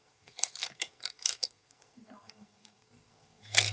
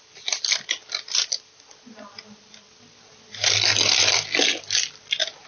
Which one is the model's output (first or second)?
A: first